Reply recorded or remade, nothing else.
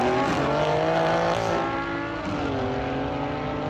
recorded